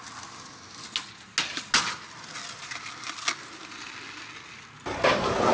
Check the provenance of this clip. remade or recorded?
recorded